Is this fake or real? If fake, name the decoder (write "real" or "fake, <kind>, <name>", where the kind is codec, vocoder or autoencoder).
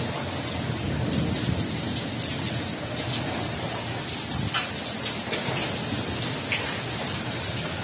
real